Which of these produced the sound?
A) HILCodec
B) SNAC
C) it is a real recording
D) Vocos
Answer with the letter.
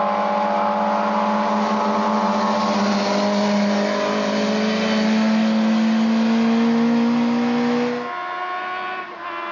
C